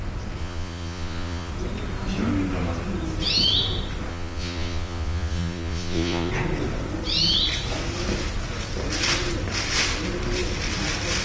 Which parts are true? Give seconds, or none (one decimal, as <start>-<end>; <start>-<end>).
0.0-0.4; 1.5-4.1; 6.3-11.2